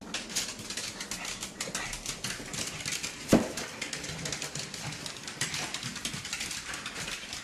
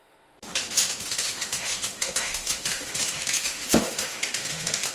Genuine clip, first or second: first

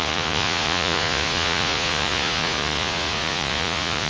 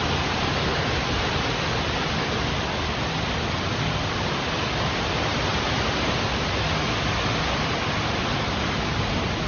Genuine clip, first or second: second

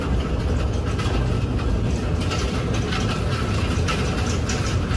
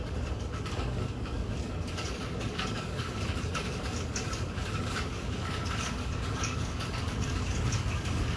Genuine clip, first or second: first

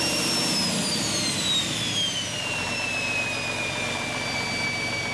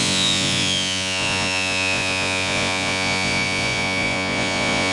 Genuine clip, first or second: first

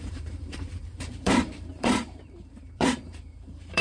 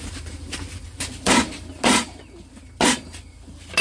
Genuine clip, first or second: second